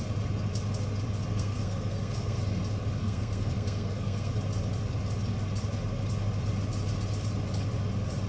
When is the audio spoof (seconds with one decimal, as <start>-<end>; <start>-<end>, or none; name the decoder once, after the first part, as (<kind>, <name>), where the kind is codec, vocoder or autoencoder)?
1.3-2.4 (codec, SNAC); 3.0-4.3